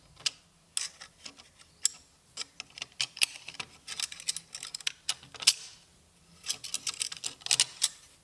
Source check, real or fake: real